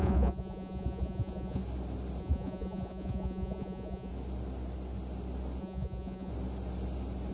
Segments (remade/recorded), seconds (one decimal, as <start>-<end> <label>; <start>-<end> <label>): 0.0-1.6 remade; 1.6-2.2 recorded; 2.2-4.1 remade; 4.1-5.6 recorded; 5.6-6.3 remade; 6.3-7.3 recorded